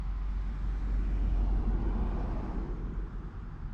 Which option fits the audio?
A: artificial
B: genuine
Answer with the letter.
B